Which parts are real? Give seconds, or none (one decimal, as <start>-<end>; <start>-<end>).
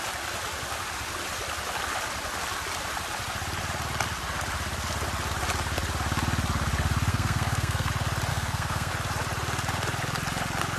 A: 0.0-7.1; 7.9-8.3; 8.9-10.8